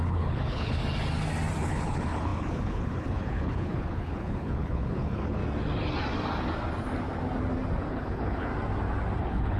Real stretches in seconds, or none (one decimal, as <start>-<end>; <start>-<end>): 0.8-1.6; 5.4-7.9; 8.5-9.2